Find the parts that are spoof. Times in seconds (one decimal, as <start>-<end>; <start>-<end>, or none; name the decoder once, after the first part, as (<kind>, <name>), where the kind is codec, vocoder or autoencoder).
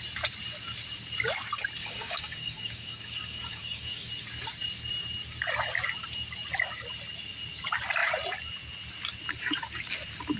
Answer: 1.8-4.1 (codec, DAC)